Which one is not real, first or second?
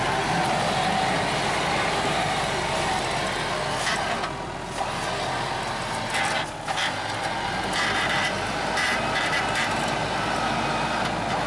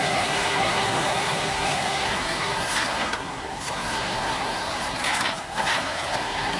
second